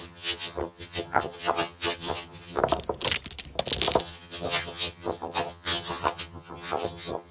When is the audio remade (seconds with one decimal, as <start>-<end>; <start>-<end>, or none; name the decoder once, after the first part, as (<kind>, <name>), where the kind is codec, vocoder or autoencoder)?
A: 0.0-2.6 (vocoder, HiFi-GAN); 4.0-7.3